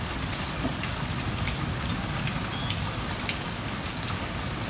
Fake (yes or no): no